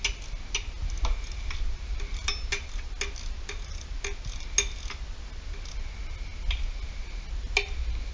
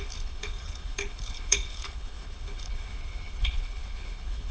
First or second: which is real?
first